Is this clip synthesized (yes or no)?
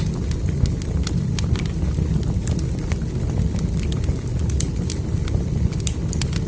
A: no